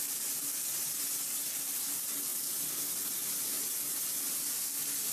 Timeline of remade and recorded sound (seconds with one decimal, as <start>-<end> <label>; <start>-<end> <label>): 0.0-5.1 recorded